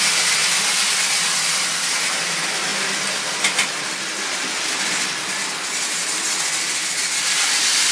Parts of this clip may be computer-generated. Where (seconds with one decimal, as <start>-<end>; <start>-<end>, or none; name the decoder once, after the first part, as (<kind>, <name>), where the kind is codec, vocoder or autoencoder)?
none